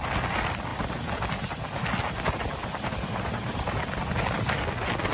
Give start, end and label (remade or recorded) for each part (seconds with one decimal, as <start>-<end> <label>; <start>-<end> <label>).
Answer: 0.0-2.6 recorded; 2.6-3.8 remade; 3.8-5.1 recorded